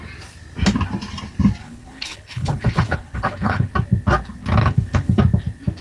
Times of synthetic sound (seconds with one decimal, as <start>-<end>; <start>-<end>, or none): 1.6-3.7; 4.6-5.2